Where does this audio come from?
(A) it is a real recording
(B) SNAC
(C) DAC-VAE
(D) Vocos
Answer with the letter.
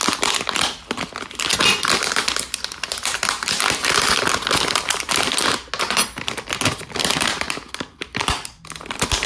A